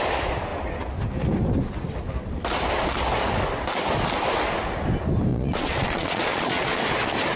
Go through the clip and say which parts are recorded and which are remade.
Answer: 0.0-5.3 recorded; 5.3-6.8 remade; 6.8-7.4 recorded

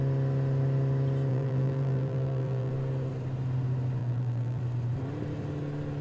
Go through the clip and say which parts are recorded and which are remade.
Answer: 0.0-1.3 recorded; 1.3-2.7 remade; 2.7-4.0 recorded; 4.0-4.6 remade; 4.6-6.0 recorded

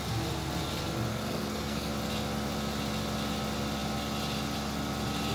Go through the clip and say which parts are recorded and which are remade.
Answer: 0.0-1.1 recorded; 1.1-1.9 remade; 1.9-5.3 recorded

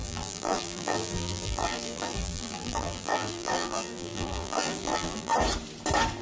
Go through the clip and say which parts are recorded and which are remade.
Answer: 0.0-5.3 remade; 5.3-6.2 recorded

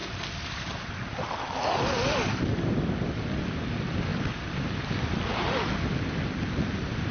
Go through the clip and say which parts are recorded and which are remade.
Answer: 0.0-0.7 remade; 0.7-4.1 recorded; 4.1-5.0 remade; 5.0-7.1 recorded

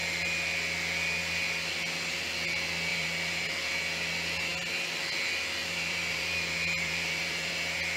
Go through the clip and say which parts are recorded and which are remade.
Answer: 0.0-2.9 recorded; 2.9-3.7 remade; 3.7-5.6 recorded; 5.6-7.5 remade; 7.5-8.0 recorded

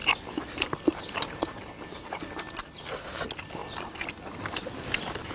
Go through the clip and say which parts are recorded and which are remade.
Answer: 0.0-5.3 recorded

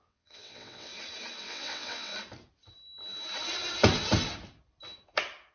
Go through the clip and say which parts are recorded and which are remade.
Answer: 0.0-0.9 remade; 0.9-1.4 recorded; 1.4-2.1 remade; 2.1-5.5 recorded